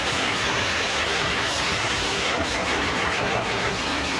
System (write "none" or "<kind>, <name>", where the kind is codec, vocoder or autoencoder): codec, SNAC